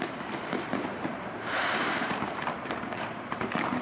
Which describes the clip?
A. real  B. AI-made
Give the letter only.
B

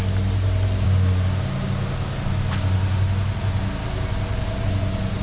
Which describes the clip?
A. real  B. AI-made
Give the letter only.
A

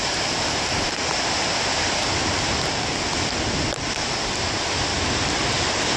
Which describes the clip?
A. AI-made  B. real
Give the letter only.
A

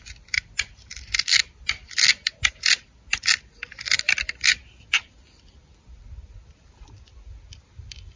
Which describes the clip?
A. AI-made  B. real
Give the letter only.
B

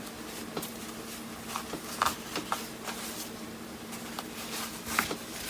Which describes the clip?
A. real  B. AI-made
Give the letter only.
A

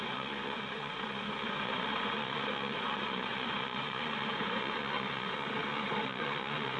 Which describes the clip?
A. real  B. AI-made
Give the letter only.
B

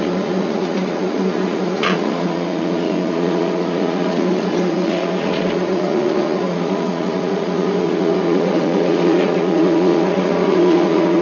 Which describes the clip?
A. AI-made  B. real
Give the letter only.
A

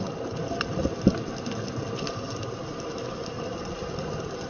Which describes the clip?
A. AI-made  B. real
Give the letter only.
B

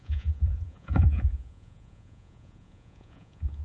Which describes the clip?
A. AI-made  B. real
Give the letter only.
A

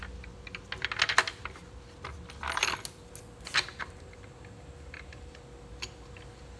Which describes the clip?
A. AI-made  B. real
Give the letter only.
B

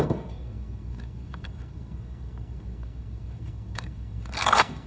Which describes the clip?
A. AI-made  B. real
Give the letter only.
A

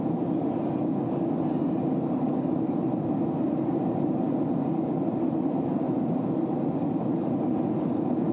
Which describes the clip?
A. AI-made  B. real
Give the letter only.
B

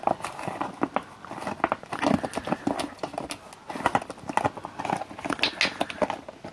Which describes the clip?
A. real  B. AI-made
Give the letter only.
A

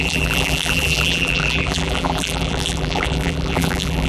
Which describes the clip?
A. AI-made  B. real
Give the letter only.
A